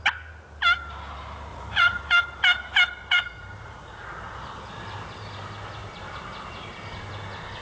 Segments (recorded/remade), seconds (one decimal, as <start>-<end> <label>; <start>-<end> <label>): 0.0-1.5 recorded; 1.5-2.0 remade; 2.0-3.0 recorded; 3.0-4.4 remade; 4.4-7.6 recorded

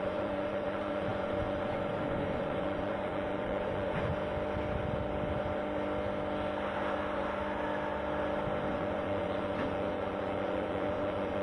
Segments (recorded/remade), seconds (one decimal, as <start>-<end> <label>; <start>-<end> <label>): 0.0-4.1 remade; 4.1-8.7 recorded; 8.7-11.4 remade

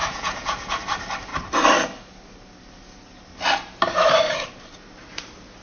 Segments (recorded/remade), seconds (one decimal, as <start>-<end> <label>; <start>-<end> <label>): 0.0-0.8 remade; 0.8-5.6 recorded